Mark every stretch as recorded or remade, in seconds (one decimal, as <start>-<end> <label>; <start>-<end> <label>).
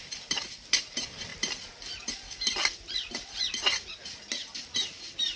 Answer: 0.0-5.4 recorded